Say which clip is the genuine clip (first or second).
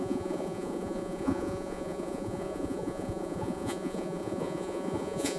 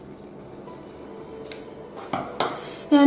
second